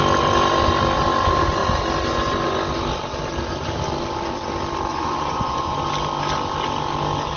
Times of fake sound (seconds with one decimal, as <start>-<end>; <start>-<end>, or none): 4.9-5.8